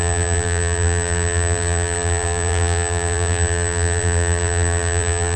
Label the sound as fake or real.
fake